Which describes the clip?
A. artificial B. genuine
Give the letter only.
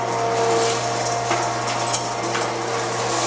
B